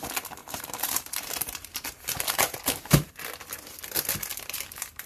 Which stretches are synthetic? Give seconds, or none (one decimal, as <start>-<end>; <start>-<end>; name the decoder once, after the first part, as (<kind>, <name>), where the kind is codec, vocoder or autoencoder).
0.4-3.1 (vocoder, BigVGAN v2); 4.3-5.1